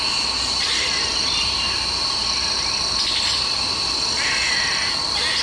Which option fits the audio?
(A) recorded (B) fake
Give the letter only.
A